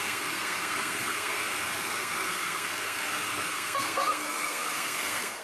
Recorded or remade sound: remade